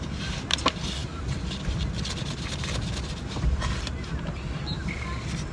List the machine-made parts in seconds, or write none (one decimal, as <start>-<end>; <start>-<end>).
none